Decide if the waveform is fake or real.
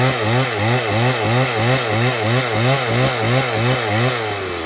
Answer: real